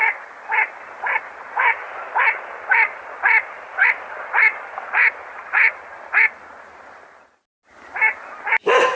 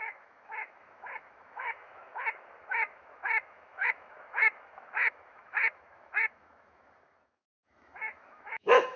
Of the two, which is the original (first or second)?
first